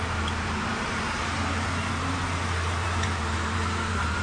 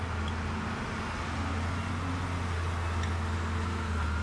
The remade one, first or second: first